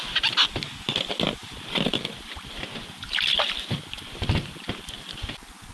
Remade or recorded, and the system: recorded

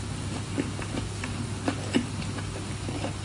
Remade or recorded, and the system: recorded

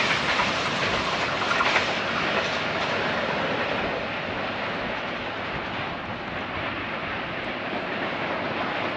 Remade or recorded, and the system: recorded